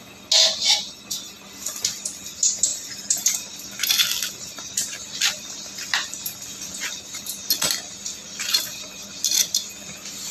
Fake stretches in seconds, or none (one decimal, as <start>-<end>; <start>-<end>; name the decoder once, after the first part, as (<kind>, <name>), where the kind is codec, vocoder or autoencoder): none